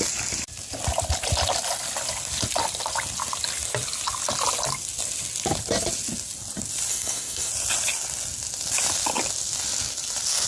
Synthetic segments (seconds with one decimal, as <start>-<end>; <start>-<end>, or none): 6.9-7.5